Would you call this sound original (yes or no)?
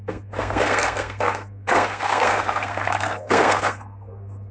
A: no